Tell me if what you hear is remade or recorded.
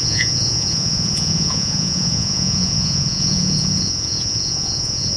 remade